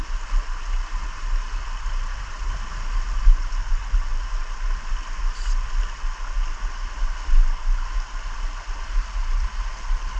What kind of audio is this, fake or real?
real